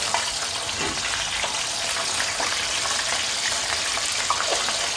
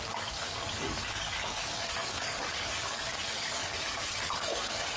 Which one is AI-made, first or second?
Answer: second